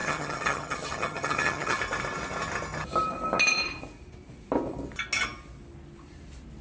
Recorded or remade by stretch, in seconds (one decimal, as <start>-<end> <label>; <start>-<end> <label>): 0.0-1.8 remade; 1.8-6.6 recorded